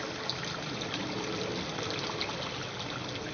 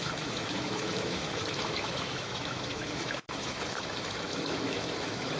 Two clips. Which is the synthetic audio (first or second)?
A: second